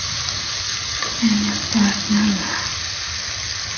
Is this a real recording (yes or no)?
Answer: yes